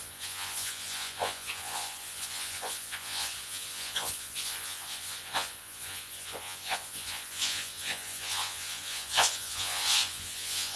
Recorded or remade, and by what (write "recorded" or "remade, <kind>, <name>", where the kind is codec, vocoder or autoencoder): remade, vocoder, Vocos